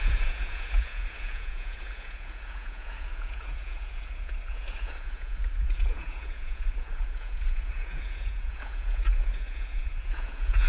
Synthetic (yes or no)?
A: yes